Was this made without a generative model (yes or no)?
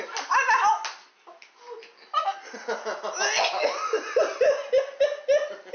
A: yes